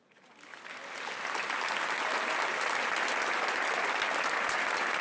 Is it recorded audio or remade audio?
recorded